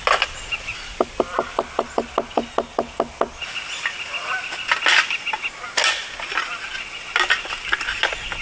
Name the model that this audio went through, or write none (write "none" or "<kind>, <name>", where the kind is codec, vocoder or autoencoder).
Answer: none